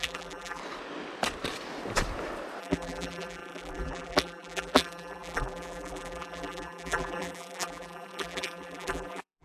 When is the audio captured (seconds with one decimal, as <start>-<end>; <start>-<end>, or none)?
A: 0.6-2.6